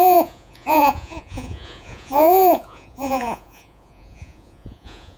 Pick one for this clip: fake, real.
fake